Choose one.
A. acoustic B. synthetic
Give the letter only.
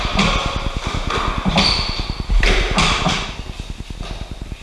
A